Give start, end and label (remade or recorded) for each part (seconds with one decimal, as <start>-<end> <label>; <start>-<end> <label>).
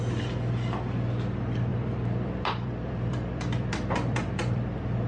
0.0-1.7 recorded; 1.7-5.1 remade